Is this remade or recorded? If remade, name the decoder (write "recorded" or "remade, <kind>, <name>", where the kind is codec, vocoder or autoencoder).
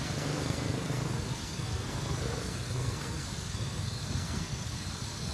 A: remade, codec, SNAC